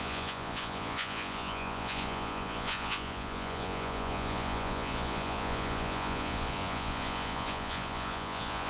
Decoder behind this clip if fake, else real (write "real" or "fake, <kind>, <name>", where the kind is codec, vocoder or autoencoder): fake, vocoder, Vocos